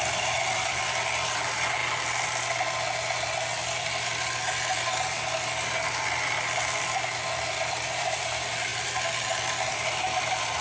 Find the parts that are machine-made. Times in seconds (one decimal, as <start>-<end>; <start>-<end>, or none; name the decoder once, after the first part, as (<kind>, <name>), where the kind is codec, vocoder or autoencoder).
0.0-1.8 (vocoder, BigVGAN v2); 6.8-8.7; 9.7-10.6